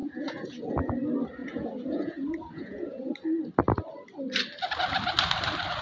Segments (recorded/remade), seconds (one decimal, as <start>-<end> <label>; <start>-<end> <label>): 0.0-0.9 remade; 0.9-1.4 recorded; 1.4-3.1 remade; 3.1-5.8 recorded